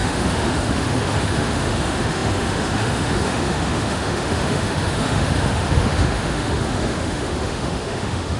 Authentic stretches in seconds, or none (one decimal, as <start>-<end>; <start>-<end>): none